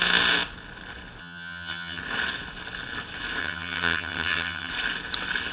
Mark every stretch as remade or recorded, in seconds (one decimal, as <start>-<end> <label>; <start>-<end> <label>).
0.0-1.2 recorded; 1.2-2.0 remade; 2.0-3.4 recorded; 3.4-4.7 remade; 4.7-5.5 recorded